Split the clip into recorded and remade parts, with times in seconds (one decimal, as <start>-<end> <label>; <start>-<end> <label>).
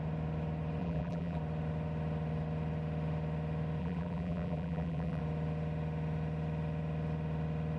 0.0-0.8 recorded; 0.8-1.4 remade; 1.4-3.8 recorded; 3.8-5.2 remade; 5.2-7.8 recorded